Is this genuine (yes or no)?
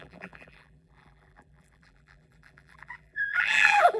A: no